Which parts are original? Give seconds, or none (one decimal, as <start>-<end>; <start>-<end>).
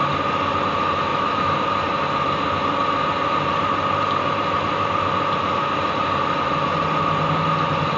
0.0-1.1; 1.6-8.0